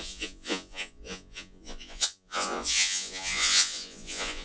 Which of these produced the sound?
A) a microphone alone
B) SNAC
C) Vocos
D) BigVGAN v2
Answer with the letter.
C